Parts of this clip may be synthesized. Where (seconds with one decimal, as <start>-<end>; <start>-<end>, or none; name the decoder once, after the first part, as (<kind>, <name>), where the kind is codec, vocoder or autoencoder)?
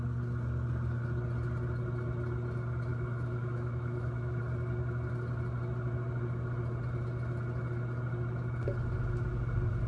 2.9-4.4 (autoencoder, DAC-VAE)